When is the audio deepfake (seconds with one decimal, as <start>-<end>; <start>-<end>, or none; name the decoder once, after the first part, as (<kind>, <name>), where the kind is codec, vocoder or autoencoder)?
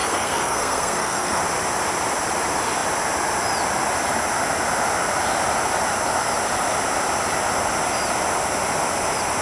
0.0-1.4 (codec, SNAC)